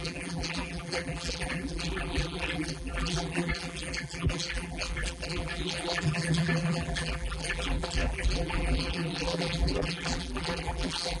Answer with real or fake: fake